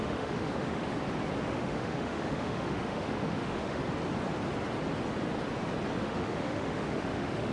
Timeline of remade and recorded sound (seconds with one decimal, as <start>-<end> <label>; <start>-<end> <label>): 0.0-0.9 remade; 0.9-1.5 recorded; 1.5-3.8 remade; 3.8-6.0 recorded; 6.0-7.5 remade